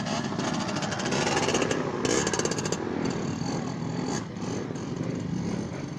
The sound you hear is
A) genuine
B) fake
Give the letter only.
A